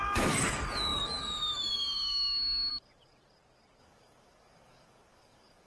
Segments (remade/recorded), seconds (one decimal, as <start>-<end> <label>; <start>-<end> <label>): 0.0-2.7 remade; 2.7-3.8 recorded; 3.8-5.7 remade